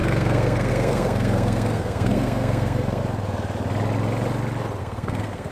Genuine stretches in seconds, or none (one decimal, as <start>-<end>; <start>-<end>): 3.0-4.8